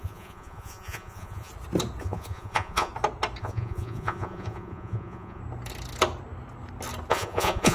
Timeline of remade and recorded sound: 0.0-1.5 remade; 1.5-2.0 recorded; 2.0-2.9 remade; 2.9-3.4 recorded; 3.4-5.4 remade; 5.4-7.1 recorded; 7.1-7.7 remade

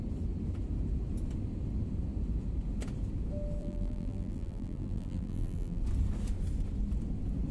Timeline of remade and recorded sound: 0.0-3.6 recorded; 3.6-5.8 remade; 5.8-7.5 recorded

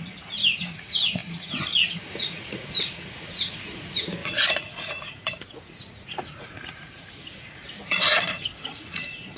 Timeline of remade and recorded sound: 0.0-9.4 remade

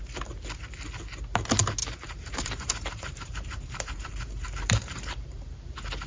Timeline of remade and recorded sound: 0.0-1.8 recorded; 1.8-5.5 remade; 5.5-6.1 recorded

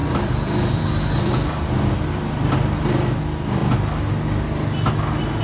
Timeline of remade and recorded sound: 0.0-3.2 remade; 3.2-5.4 recorded